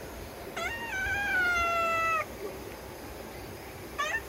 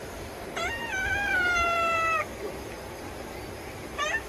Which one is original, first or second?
first